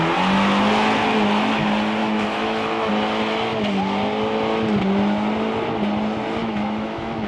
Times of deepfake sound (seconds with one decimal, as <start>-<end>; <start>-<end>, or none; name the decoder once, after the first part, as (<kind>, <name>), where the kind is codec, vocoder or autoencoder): 2.0-2.9 (autoencoder, DAC-VAE); 6.4-7.3